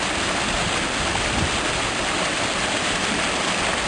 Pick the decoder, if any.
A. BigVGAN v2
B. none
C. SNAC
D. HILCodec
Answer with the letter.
B